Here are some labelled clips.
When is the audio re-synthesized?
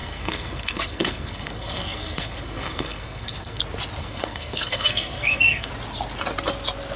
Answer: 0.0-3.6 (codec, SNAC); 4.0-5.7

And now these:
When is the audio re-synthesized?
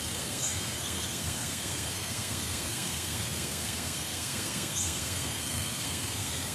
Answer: 0.0-6.5 (codec, SNAC)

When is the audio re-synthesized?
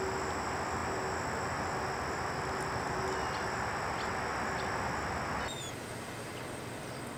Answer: none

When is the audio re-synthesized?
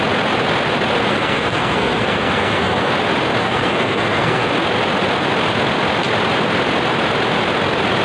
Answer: 1.1-2.9 (codec, SNAC); 3.4-4.5